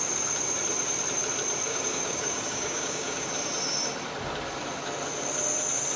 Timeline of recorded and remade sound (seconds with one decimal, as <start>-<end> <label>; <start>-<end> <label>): 0.0-1.7 recorded; 1.7-3.3 remade; 3.3-6.0 recorded